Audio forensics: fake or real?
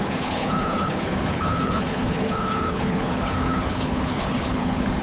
fake